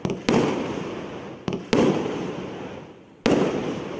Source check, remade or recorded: recorded